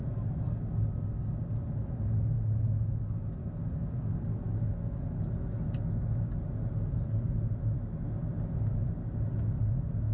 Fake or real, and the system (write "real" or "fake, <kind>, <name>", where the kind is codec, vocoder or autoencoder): real